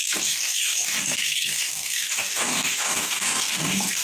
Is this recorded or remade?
remade